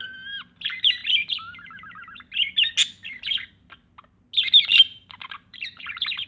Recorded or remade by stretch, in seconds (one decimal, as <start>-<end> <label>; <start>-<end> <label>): 0.0-4.7 recorded; 4.7-6.3 remade